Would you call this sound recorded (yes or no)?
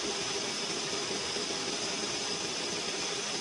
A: yes